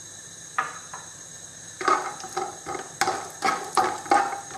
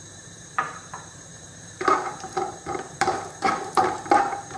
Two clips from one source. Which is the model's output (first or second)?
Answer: second